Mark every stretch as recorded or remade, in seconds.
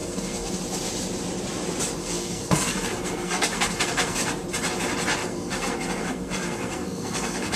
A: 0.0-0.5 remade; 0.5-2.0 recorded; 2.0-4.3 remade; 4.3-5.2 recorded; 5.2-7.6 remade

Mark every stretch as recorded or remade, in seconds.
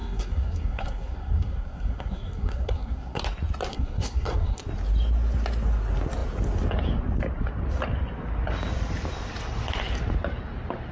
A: 0.0-3.2 remade; 3.2-3.7 recorded; 3.7-4.6 remade; 4.6-10.9 recorded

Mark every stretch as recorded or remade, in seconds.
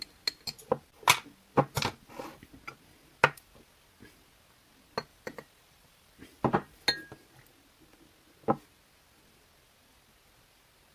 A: 0.0-5.1 recorded; 5.1-6.8 remade; 6.8-10.9 recorded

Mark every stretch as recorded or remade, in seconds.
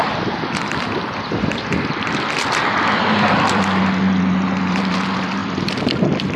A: 0.0-6.4 remade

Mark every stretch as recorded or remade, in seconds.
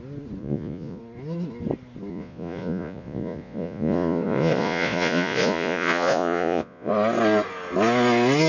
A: 0.0-0.4 recorded; 0.4-1.0 remade; 1.0-2.1 recorded; 2.1-6.9 remade; 6.9-8.5 recorded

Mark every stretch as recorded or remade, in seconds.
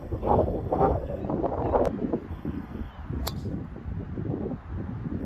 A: 0.0-1.2 remade; 1.2-2.3 recorded; 2.3-2.9 remade; 2.9-5.2 recorded